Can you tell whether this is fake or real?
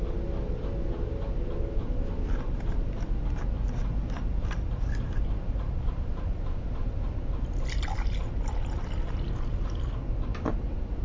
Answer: real